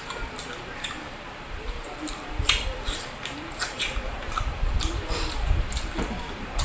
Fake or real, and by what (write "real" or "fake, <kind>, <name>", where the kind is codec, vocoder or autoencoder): fake, vocoder, BigVGAN v2